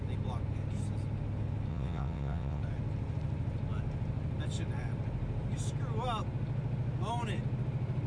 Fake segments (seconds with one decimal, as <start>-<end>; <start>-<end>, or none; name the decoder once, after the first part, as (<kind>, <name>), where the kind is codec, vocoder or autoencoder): 1.7-2.6 (vocoder, WaveNeXt)